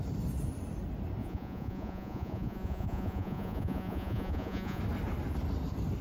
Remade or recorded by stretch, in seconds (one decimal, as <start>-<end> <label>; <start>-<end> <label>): 0.0-1.2 recorded; 1.2-4.8 remade; 4.8-6.0 recorded